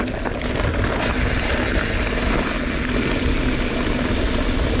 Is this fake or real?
real